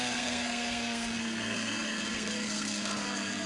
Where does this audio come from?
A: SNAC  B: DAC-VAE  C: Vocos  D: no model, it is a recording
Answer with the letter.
A